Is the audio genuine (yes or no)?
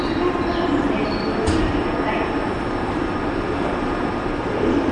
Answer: no